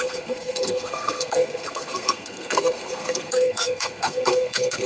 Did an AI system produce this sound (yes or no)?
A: yes